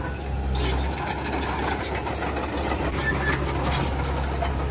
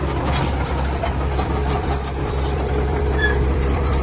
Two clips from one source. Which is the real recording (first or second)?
first